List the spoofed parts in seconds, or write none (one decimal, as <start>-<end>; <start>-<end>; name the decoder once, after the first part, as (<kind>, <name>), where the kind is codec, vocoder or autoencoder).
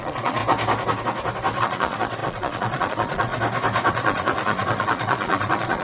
0.0-0.4 (vocoder, Vocos); 1.6-3.3; 3.9-5.8